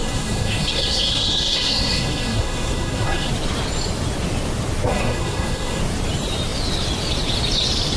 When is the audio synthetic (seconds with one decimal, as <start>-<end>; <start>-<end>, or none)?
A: 0.0-3.3; 4.9-5.8